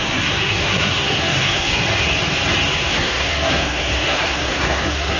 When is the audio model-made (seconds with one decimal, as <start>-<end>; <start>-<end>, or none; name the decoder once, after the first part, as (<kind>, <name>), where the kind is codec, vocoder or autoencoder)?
0.0-1.8 (codec, SNAC); 2.9-5.2